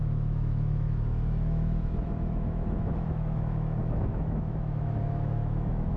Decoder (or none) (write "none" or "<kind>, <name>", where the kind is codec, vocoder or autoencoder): autoencoder, DAC-VAE